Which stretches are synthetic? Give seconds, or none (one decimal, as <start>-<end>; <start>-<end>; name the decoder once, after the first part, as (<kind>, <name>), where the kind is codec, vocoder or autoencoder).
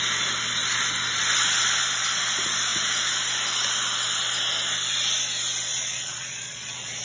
5.7-7.0 (vocoder, Vocos)